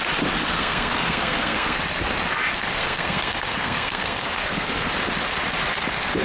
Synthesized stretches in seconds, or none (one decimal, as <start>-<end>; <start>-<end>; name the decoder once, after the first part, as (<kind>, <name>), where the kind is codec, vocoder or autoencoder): 0.5-1.8 (codec, SNAC); 2.7-4.9